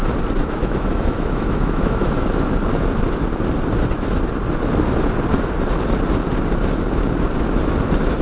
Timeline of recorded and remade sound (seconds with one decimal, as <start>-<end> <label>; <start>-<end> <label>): 0.0-0.4 recorded; 0.4-2.1 remade; 2.1-8.2 recorded